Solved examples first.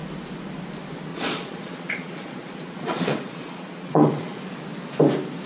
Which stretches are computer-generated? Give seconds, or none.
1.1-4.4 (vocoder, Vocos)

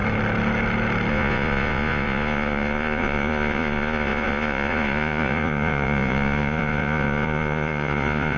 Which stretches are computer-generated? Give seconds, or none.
1.1-8.4 (vocoder, Vocos)

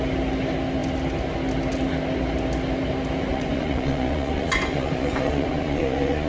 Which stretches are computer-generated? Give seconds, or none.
3.3-6.3 (vocoder, Vocos)

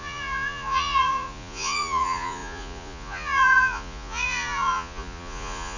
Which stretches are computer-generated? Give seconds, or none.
0.0-5.8 (vocoder, Vocos)